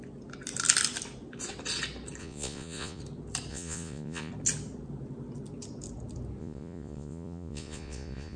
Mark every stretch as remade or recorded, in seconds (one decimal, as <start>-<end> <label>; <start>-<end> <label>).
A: 0.0-2.2 recorded; 2.2-3.0 remade; 3.0-3.5 recorded; 3.5-4.3 remade; 4.3-6.4 recorded; 6.4-8.4 remade